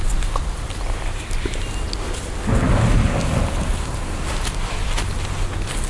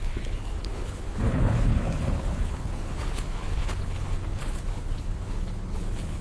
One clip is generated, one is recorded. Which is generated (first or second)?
second